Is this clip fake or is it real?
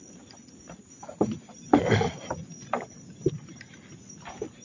real